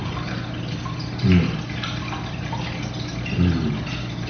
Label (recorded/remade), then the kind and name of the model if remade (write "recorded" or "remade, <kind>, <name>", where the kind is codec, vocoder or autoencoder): recorded